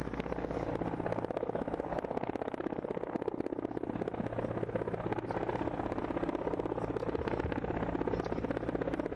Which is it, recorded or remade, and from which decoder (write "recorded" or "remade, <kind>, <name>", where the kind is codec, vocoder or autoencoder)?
recorded